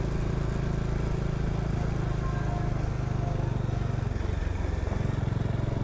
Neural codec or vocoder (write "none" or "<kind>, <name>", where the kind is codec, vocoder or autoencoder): none